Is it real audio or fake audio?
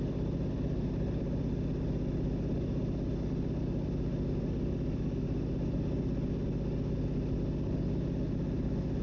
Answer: real